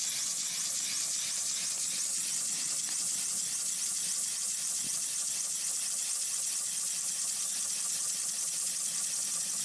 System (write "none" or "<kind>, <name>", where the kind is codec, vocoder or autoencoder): none